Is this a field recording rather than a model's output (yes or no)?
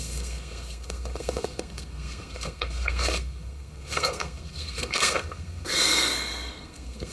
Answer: no